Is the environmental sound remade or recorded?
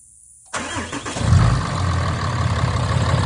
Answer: recorded